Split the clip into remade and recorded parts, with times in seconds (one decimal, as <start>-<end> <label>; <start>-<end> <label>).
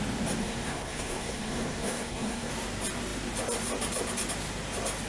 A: 0.0-0.4 recorded; 0.4-2.5 remade; 2.5-5.1 recorded